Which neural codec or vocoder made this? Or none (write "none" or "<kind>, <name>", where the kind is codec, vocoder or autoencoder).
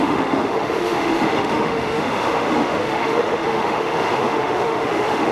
autoencoder, DAC-VAE